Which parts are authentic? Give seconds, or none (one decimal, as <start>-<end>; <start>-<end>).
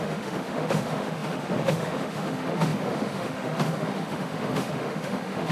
none